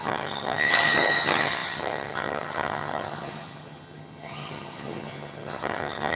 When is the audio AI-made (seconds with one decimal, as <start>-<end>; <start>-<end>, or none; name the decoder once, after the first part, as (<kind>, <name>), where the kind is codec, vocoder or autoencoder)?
0.0-6.2 (vocoder, HiFi-GAN)